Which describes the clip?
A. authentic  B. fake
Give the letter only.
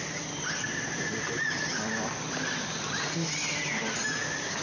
A